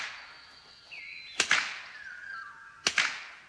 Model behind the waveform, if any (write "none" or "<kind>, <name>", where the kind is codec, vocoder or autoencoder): none